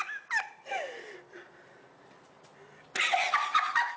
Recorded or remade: recorded